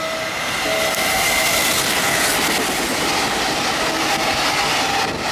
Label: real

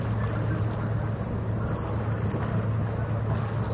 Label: real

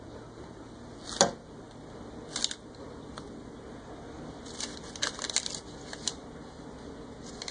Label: real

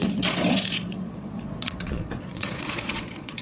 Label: fake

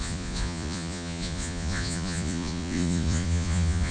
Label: fake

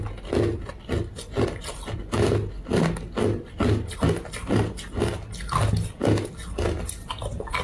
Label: real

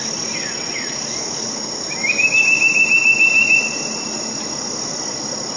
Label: real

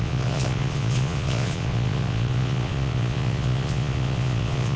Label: fake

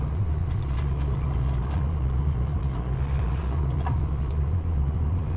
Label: fake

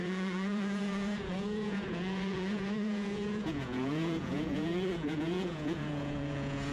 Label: fake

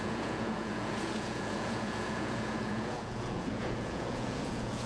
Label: fake